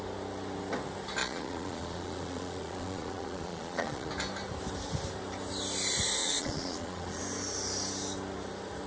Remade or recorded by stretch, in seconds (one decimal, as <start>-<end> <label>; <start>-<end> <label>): 0.0-1.2 recorded; 1.2-4.1 remade; 4.1-6.2 recorded; 6.2-7.2 remade; 7.2-8.9 recorded